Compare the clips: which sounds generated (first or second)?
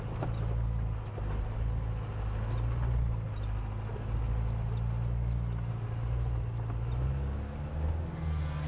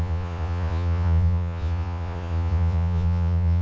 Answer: second